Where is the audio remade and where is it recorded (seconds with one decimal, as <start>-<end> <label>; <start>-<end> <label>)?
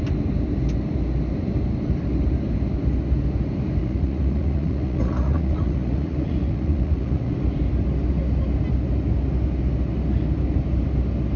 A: 0.0-3.8 recorded; 3.8-7.3 remade; 7.3-11.4 recorded